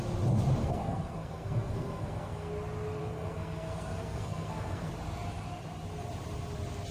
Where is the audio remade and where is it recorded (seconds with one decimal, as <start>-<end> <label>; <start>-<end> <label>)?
0.0-0.6 recorded; 0.6-2.5 remade; 2.5-3.0 recorded; 3.0-4.9 remade; 4.9-6.9 recorded